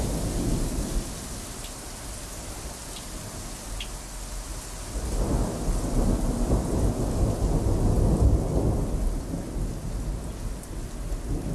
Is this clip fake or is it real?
real